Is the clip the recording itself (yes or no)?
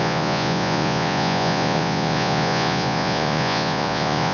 no